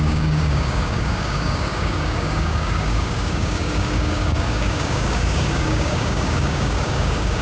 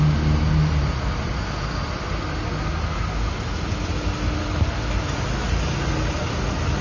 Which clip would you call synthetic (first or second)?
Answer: first